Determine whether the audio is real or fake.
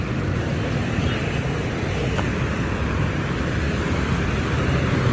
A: real